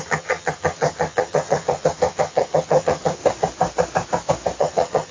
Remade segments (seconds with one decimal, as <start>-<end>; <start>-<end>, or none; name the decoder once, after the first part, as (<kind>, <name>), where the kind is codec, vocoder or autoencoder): 0.0-3.2 (vocoder, HiFi-GAN); 4.6-5.1